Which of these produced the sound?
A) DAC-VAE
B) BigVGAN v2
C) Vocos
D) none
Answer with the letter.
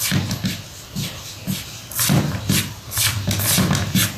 D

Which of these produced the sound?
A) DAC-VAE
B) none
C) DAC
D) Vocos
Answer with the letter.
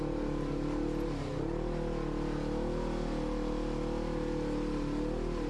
B